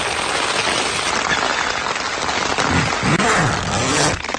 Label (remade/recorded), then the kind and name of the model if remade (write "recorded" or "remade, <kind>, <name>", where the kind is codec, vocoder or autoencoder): recorded